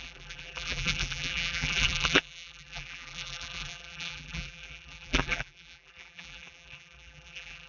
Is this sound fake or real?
fake